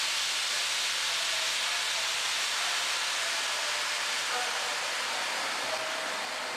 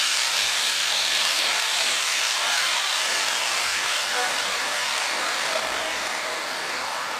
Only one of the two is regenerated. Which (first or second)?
second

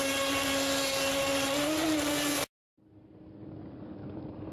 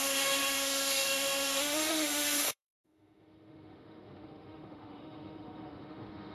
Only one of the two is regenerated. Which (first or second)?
second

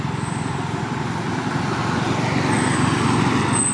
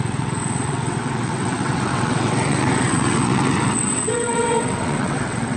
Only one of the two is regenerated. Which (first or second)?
second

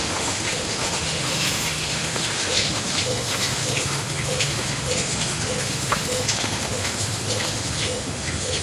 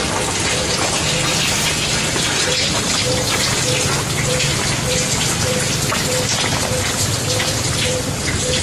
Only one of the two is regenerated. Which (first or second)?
first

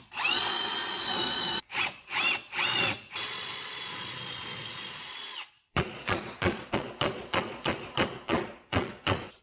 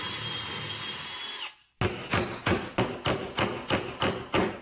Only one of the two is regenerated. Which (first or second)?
first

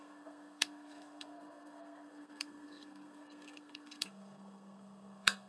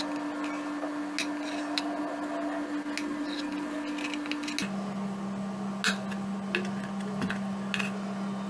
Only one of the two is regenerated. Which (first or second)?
first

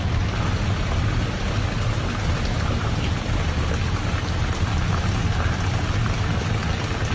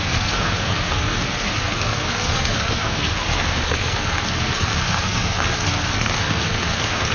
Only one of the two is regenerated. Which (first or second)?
second